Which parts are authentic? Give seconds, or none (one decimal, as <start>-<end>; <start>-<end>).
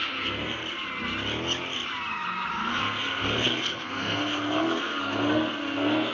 0.6-2.5